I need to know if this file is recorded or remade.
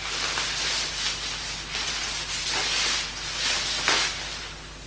recorded